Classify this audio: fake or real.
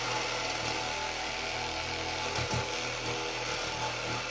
real